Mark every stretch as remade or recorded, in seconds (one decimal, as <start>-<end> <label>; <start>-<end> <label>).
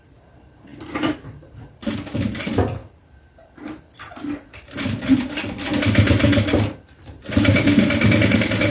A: 0.0-8.7 remade